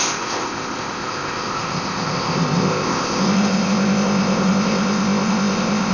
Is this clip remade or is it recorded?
remade